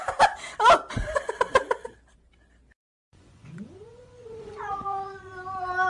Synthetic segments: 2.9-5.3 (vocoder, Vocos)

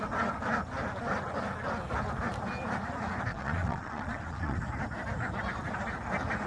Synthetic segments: 3.3-4.6 (vocoder, Vocos)

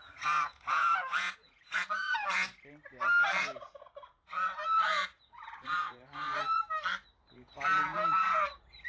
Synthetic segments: 0.0-2.5 (vocoder, Vocos); 3.4-6.6; 7.3-8.9

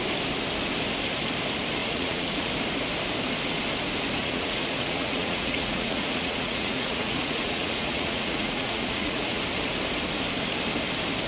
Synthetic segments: 1.8-2.5 (vocoder, Vocos); 4.2-9.4

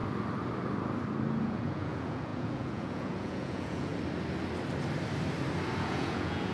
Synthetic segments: 1.4-3.9 (vocoder, Vocos); 5.8-6.5